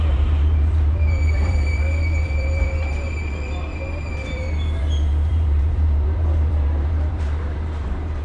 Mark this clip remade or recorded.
remade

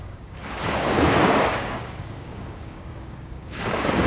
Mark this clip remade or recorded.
remade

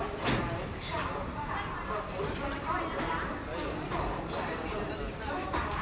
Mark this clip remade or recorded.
recorded